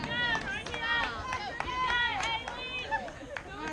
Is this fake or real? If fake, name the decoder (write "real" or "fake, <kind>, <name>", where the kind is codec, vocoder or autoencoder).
real